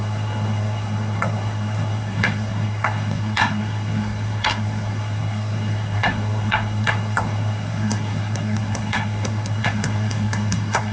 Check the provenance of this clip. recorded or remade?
remade